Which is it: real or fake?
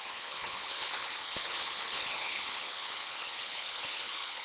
fake